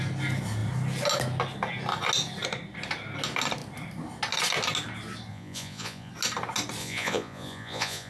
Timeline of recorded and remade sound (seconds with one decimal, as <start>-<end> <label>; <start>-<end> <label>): 0.0-5.3 recorded; 5.3-6.1 remade; 6.1-6.8 recorded; 6.8-8.1 remade